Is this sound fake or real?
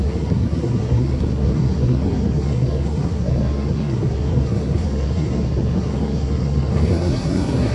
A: fake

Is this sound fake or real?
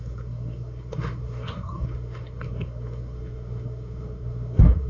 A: fake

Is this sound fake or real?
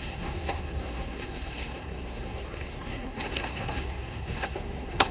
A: fake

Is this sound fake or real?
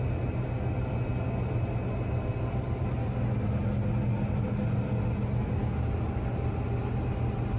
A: real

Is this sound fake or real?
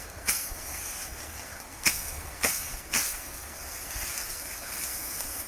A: fake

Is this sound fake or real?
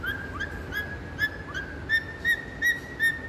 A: real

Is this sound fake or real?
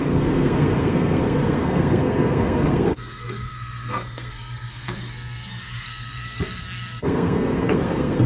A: fake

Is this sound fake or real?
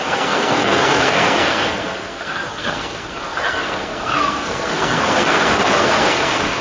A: fake